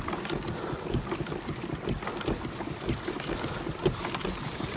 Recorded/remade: recorded